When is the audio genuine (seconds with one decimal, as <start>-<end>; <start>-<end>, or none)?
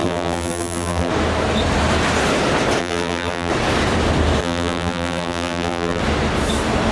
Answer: 1.1-2.8; 3.5-4.4; 6.0-6.9